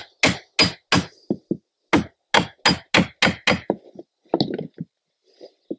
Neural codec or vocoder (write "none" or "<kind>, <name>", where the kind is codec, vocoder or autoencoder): none